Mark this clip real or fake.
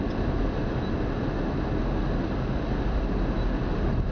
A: real